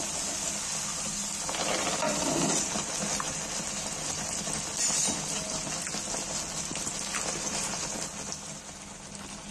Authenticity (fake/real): real